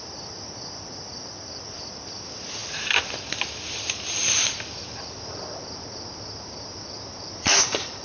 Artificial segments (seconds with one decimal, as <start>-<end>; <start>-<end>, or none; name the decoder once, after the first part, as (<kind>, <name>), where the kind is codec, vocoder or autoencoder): 0.0-2.6 (vocoder, BigVGAN v2); 7.4-8.0